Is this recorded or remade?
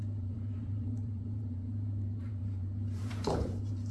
remade